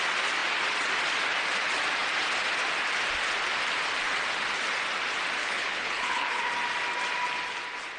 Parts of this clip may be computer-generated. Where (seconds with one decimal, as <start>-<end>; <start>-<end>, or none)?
5.4-6.5